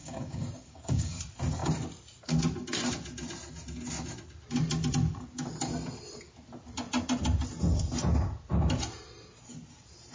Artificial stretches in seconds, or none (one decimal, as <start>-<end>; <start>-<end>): 0.0-1.2